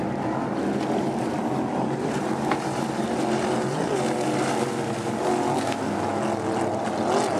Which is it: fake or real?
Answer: real